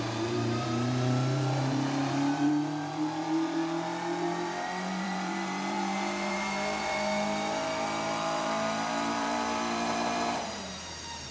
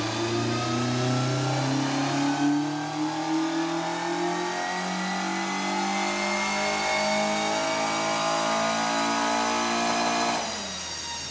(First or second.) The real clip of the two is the second